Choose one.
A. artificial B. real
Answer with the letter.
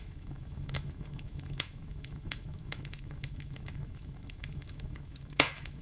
A